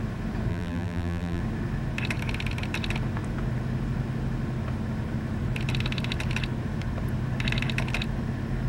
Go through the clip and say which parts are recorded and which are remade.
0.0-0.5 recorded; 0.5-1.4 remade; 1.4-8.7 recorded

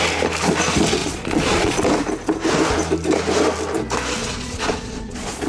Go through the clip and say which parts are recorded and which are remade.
0.0-1.0 recorded; 1.0-1.8 remade; 1.8-4.2 recorded; 4.2-5.5 remade

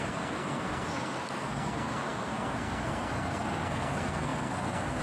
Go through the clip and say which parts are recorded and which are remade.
0.0-5.0 remade

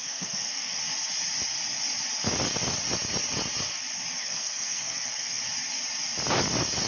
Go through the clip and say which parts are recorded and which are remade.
0.0-0.8 remade; 0.8-4.2 recorded; 4.2-5.4 remade; 5.4-6.9 recorded

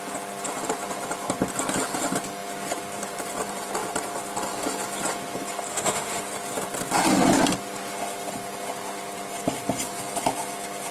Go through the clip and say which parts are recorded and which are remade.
0.0-5.7 recorded; 5.7-6.2 remade; 6.2-10.9 recorded

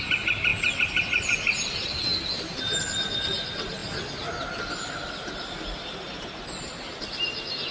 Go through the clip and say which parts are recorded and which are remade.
0.0-7.7 recorded

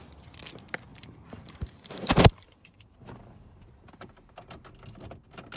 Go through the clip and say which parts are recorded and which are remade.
0.0-0.9 recorded; 0.9-4.3 remade; 4.3-5.6 recorded

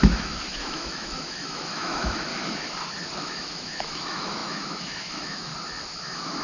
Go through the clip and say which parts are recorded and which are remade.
0.0-2.3 remade; 2.3-3.2 recorded; 3.2-5.5 remade; 5.5-6.0 recorded; 6.0-6.4 remade